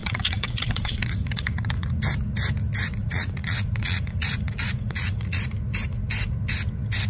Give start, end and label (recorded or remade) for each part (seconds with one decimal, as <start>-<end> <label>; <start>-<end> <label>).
0.0-2.0 remade; 2.0-3.0 recorded; 3.0-5.4 remade; 5.4-7.1 recorded